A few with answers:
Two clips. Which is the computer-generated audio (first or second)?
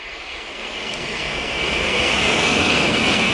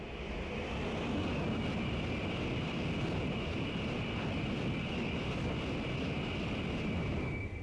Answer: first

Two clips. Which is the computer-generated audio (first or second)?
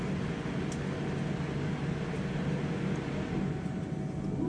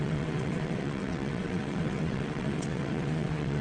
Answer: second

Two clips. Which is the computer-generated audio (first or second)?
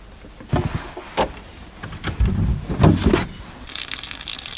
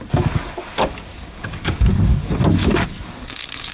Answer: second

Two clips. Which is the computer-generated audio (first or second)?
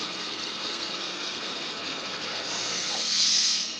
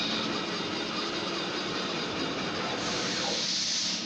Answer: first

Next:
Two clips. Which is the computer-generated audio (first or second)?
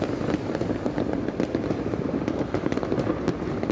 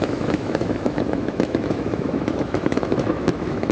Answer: second